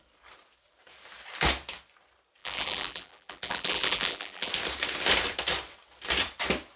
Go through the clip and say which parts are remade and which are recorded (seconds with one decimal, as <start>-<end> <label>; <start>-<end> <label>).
0.0-2.4 recorded; 2.4-4.5 remade; 4.5-6.8 recorded